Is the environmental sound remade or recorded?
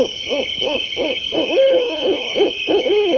remade